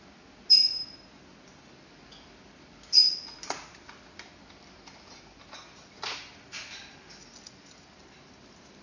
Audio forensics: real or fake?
real